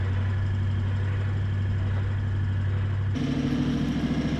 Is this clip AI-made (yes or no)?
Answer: no